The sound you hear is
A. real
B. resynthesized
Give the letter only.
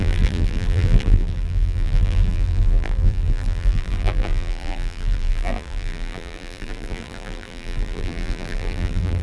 B